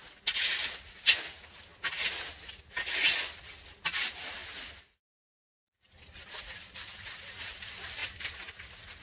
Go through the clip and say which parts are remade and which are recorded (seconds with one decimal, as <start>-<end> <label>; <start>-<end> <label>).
0.0-9.0 recorded